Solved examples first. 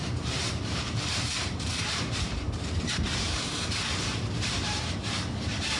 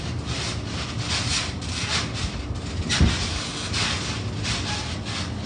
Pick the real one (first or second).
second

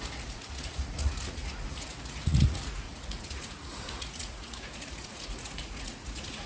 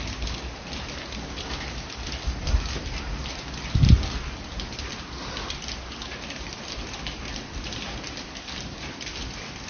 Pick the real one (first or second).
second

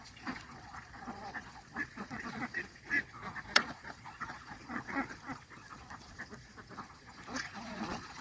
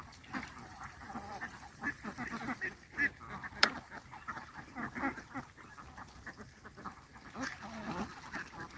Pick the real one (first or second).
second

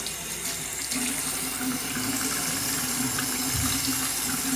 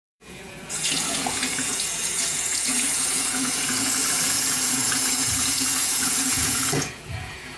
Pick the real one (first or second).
first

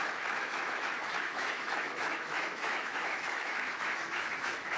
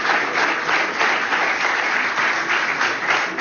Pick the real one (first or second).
second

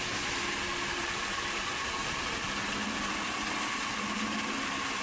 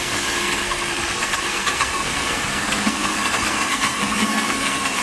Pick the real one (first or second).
first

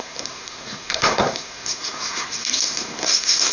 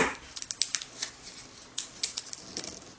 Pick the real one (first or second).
second